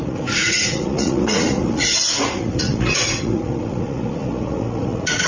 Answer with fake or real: fake